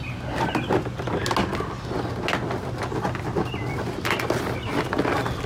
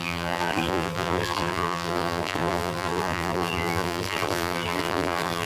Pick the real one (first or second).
first